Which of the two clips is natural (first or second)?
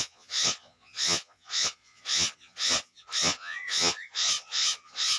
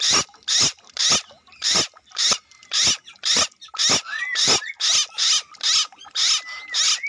second